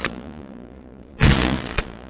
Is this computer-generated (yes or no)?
yes